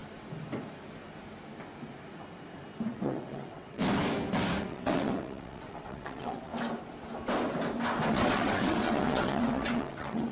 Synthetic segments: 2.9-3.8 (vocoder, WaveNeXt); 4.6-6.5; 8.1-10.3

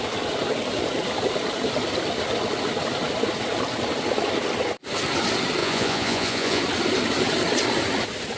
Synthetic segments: 5.6-6.6 (vocoder, Vocos)

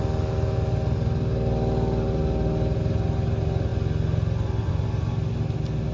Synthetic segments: none